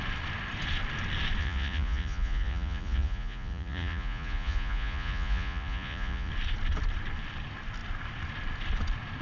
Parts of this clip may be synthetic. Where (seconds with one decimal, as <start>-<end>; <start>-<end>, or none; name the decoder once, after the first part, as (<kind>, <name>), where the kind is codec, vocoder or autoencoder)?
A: 1.4-6.3 (vocoder, Vocos)